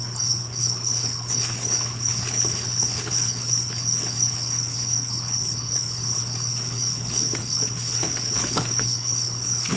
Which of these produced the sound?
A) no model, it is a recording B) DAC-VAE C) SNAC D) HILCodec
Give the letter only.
D